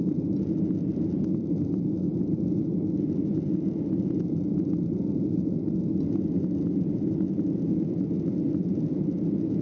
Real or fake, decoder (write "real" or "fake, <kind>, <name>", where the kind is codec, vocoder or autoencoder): real